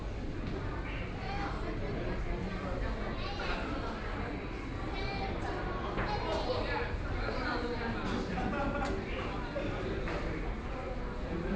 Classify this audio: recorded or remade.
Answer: recorded